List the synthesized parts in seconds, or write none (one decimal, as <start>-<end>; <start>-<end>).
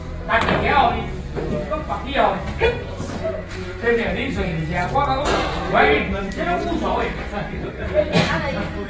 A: 0.0-0.6; 2.5-4.5; 5.2-8.9